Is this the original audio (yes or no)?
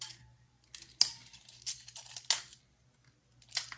yes